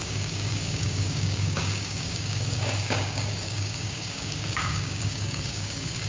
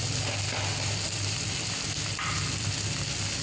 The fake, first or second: first